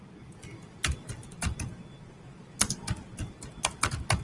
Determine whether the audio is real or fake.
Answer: real